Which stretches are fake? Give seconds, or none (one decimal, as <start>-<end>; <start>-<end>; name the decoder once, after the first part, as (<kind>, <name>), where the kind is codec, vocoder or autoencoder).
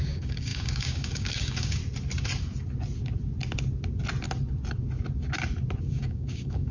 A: 0.0-1.8 (codec, DAC); 5.8-6.7